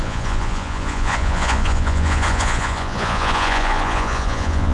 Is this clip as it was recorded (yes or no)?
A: no